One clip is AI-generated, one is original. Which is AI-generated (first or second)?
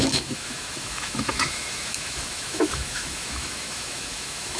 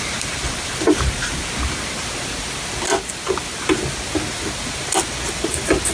first